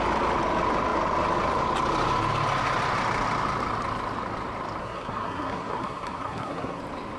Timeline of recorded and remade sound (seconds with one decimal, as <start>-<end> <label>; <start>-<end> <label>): 0.0-4.8 recorded; 4.8-6.8 remade; 6.8-7.2 recorded